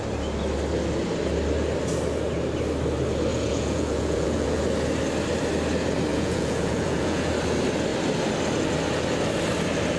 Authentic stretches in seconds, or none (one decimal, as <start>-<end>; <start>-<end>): 0.0-3.3; 4.6-6.1; 7.3-10.0